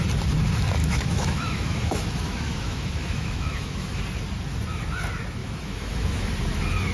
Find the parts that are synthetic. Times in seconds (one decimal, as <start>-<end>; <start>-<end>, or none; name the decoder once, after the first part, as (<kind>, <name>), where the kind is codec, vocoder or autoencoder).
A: 0.8-4.0 (autoencoder, DAC-VAE); 5.4-6.3